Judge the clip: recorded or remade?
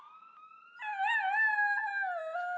recorded